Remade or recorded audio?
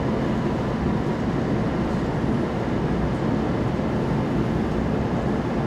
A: recorded